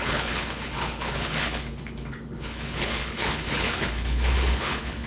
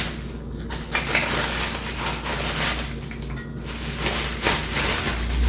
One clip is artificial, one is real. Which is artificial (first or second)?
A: first